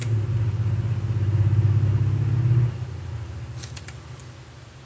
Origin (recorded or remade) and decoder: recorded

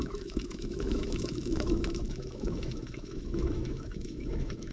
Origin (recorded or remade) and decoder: remade, autoencoder, DAC-VAE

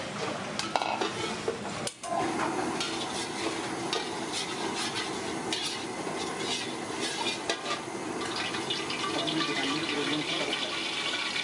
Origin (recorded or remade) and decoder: recorded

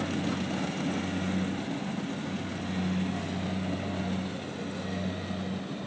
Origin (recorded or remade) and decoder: recorded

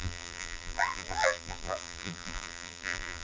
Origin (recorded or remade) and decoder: remade, vocoder, BigVGAN v2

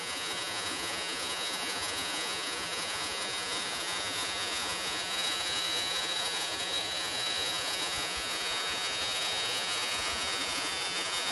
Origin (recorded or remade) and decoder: remade, vocoder, Vocos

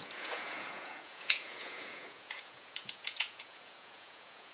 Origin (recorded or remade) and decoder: remade, vocoder, Vocos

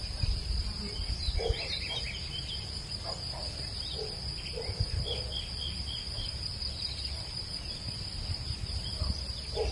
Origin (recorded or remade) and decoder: remade, vocoder, BigVGAN v2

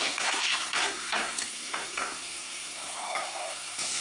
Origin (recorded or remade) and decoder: remade, codec, SNAC